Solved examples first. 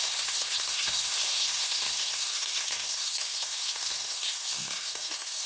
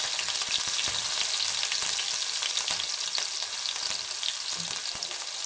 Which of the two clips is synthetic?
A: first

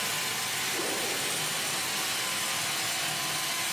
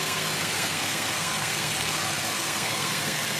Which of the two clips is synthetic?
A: second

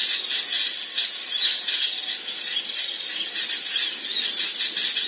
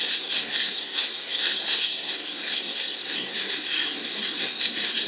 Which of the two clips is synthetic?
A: second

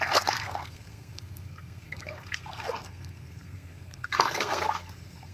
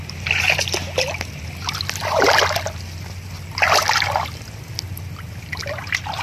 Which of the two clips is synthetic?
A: first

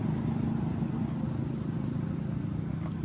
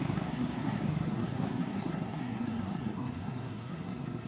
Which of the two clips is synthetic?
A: second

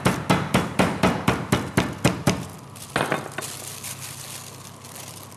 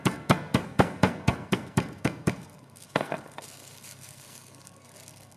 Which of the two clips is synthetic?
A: second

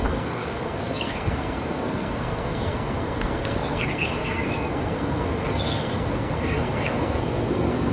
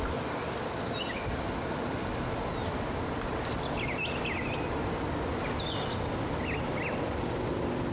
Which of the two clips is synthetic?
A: first